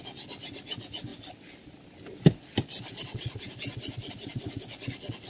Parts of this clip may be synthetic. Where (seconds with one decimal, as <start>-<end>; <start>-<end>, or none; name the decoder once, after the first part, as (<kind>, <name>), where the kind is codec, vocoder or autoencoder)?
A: none